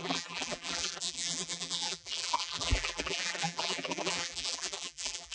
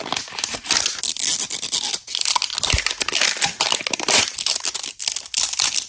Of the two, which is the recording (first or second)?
second